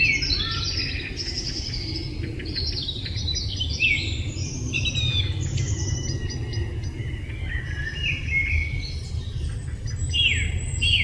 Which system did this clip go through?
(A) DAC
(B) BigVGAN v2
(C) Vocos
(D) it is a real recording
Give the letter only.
D